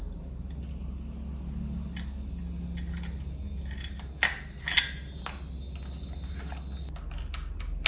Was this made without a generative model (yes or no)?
yes